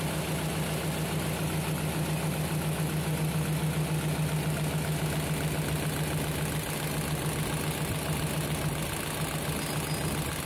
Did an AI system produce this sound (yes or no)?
no